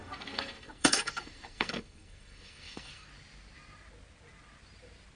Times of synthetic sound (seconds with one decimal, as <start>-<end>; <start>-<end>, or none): 0.0-3.1